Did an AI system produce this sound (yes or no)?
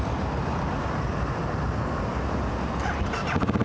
no